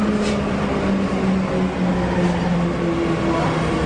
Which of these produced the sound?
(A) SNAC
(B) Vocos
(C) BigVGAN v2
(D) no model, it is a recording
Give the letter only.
D